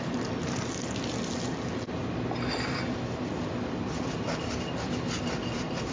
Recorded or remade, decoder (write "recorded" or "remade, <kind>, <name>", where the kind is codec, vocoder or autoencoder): recorded